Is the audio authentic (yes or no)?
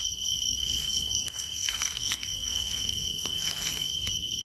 no